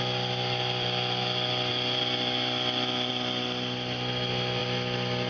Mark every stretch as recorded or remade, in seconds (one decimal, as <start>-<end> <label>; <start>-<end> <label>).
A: 0.0-5.3 recorded